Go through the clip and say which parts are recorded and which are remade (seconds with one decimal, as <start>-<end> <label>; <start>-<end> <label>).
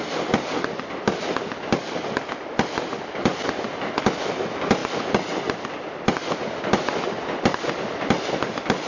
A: 0.0-8.9 recorded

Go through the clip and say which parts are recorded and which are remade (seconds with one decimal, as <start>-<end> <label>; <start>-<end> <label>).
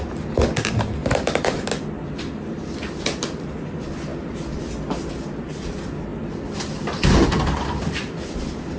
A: 0.0-1.0 recorded; 1.0-1.6 remade; 1.6-6.1 recorded; 6.1-8.2 remade; 8.2-8.8 recorded